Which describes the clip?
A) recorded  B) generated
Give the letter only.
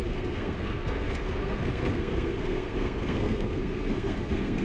B